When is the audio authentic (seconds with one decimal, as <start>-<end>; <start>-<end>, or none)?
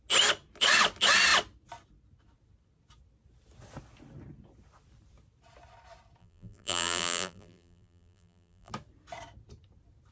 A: 0.0-6.2; 8.7-10.1